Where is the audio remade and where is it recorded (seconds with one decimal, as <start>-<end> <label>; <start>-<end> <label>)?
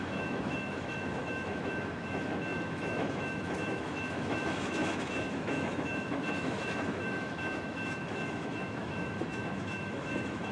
0.0-10.5 remade